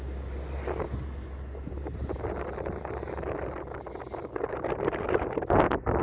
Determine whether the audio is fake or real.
real